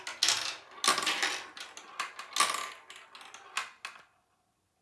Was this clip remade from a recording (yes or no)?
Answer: no